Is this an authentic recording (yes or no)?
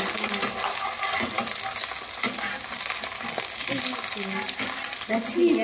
yes